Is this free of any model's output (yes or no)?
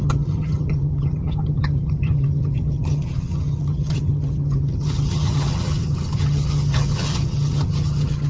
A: no